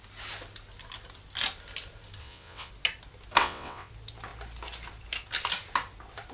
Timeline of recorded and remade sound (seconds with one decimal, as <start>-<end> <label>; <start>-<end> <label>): 0.0-2.2 recorded; 2.2-2.7 remade; 2.7-3.4 recorded; 3.4-3.9 remade; 3.9-6.3 recorded